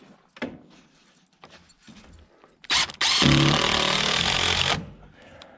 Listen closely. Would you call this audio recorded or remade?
recorded